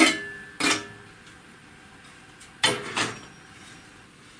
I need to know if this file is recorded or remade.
recorded